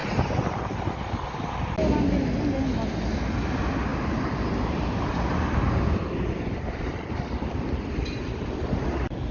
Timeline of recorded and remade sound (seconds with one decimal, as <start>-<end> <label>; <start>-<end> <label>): 0.0-0.8 remade; 0.8-3.9 recorded; 3.9-5.1 remade; 5.1-9.3 recorded